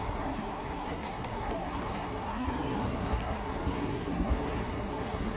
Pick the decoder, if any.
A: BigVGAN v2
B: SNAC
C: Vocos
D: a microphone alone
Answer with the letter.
B